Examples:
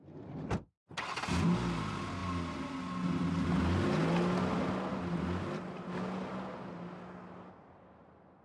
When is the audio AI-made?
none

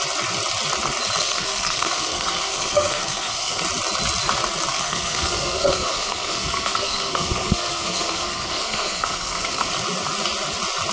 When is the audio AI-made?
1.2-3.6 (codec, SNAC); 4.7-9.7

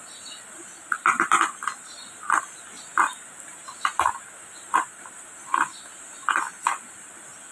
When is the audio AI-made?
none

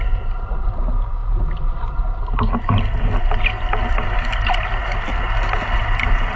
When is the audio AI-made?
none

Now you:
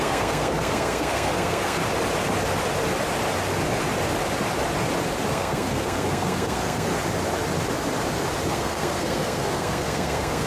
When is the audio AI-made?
0.0-1.8 (codec, SNAC); 5.3-6.9; 8.5-10.5